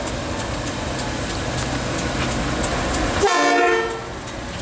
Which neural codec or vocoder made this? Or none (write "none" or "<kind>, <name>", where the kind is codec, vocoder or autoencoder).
none